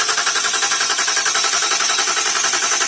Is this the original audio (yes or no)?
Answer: yes